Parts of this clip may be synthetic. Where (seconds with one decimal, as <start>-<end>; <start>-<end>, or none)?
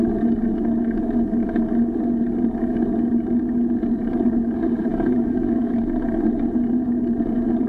4.9-5.8